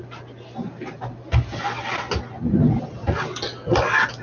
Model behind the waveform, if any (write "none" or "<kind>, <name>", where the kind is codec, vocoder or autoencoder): none